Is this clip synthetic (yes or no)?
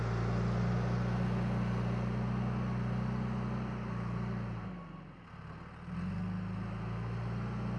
no